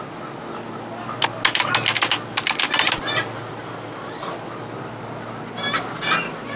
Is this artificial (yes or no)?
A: no